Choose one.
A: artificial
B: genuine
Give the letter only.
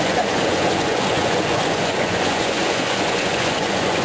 A